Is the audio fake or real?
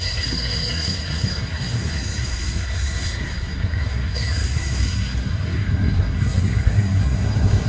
fake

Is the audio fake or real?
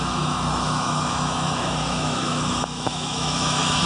fake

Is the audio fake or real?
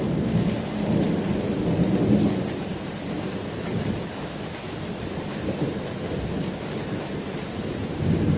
real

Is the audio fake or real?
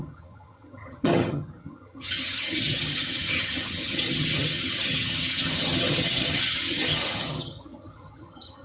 fake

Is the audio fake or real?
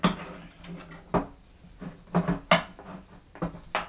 real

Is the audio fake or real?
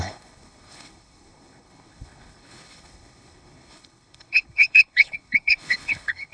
fake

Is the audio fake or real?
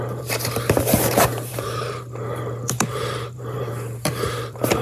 fake